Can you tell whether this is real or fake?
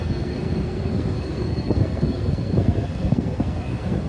fake